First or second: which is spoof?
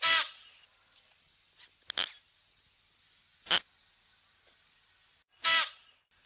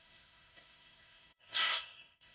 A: second